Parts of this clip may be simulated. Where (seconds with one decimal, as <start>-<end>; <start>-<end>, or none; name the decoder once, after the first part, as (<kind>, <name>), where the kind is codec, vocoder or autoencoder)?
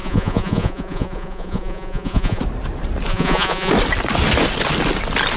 0.0-2.4 (vocoder, Vocos); 3.1-3.7